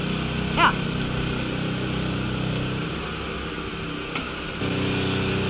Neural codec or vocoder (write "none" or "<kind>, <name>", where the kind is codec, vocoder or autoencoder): none